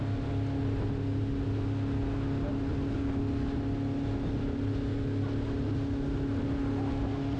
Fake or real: real